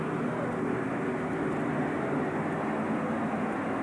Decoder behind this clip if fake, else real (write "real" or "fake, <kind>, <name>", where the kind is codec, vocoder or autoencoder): real